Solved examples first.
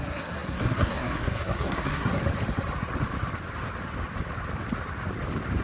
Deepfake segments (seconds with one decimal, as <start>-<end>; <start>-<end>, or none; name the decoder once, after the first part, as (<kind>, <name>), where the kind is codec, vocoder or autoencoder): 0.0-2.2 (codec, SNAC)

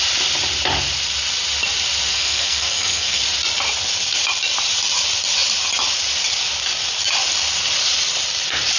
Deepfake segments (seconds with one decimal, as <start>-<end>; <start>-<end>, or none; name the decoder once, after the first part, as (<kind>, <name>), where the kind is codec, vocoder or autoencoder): 2.1-3.2 (codec, SNAC)

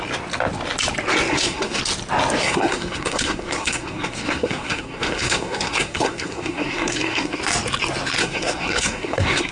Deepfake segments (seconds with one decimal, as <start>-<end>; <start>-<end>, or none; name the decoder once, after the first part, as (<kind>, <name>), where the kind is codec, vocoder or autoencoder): 1.3-1.8 (codec, SNAC); 2.4-7.4; 8.2-9.5